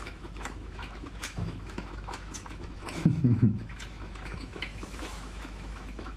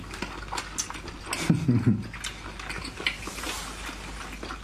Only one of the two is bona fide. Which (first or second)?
second